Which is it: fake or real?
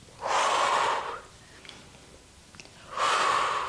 real